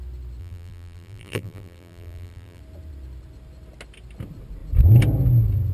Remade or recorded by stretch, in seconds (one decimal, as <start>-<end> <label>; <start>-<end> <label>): 0.0-0.4 recorded; 0.4-2.6 remade; 2.6-5.7 recorded